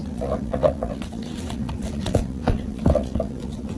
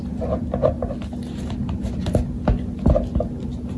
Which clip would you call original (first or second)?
second